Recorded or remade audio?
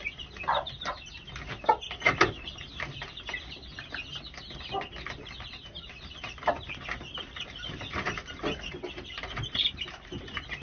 recorded